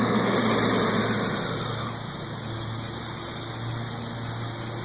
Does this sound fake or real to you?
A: real